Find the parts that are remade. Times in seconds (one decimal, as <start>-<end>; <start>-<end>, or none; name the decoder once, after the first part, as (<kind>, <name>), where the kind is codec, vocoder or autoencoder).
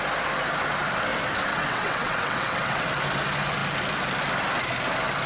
1.5-2.9 (vocoder, WaveNeXt)